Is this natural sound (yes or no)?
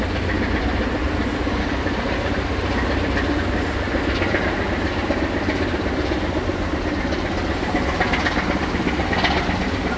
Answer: yes